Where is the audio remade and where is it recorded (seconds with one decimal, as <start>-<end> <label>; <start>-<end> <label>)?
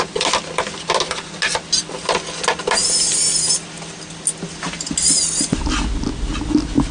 0.0-6.9 recorded